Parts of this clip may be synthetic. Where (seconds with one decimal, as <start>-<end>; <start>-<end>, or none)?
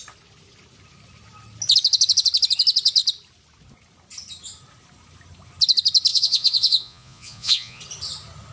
6.1-7.8